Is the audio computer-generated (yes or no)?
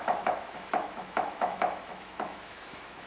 yes